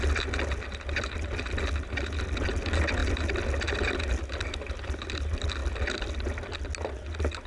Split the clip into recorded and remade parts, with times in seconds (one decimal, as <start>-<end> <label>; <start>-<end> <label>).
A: 0.0-7.5 recorded